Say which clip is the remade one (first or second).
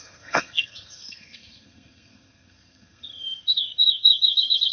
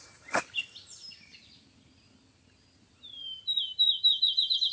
first